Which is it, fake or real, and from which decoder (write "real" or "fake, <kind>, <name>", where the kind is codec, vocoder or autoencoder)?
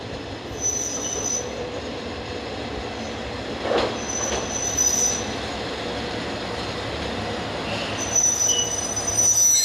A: real